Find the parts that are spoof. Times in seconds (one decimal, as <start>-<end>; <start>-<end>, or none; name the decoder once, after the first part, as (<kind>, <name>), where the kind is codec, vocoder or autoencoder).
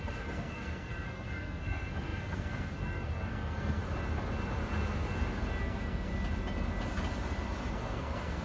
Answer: 0.0-3.8 (codec, SNAC); 5.6-6.1; 7.7-8.4